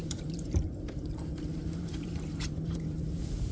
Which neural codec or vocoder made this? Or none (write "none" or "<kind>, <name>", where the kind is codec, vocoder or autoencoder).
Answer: vocoder, BigVGAN v2